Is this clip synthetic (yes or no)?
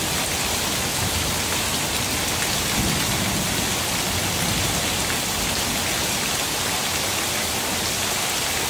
no